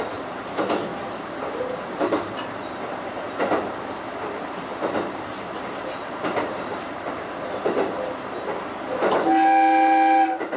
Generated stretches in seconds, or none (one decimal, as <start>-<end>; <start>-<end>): 0.9-3.0; 4.7-7.1